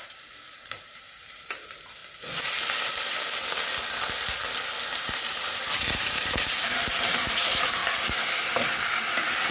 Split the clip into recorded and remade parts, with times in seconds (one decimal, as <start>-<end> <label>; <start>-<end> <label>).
0.0-2.0 remade; 2.0-4.8 recorded; 4.8-7.8 remade; 7.8-9.5 recorded